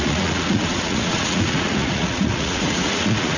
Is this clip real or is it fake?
fake